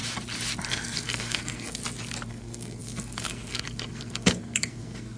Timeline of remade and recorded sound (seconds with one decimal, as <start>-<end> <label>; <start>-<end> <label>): 0.0-0.7 recorded; 0.7-1.8 remade; 1.8-2.3 recorded; 2.3-5.2 remade